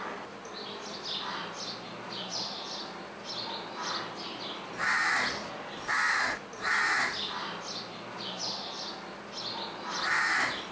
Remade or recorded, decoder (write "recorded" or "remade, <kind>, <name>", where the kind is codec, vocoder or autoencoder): recorded